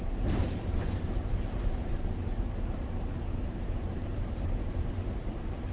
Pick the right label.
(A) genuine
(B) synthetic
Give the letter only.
B